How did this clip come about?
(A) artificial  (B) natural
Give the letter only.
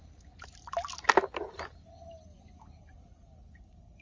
B